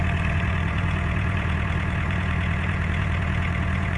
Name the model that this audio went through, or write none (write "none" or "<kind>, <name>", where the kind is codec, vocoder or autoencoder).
vocoder, Vocos